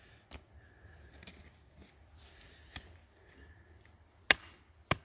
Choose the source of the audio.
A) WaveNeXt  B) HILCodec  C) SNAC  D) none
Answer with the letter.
D